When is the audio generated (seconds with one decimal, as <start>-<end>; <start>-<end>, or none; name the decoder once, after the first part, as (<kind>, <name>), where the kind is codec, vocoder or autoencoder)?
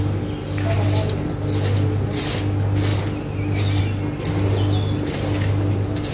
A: none